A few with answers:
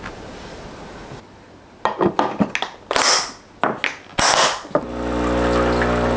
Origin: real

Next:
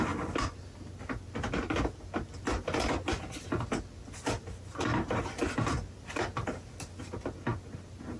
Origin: real